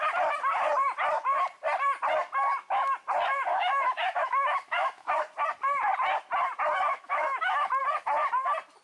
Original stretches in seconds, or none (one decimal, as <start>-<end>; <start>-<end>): 0.0-3.5; 5.1-6.9; 7.8-8.8